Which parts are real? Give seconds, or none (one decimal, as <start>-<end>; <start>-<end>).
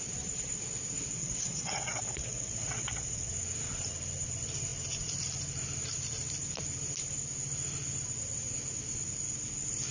0.0-1.2; 3.3-9.9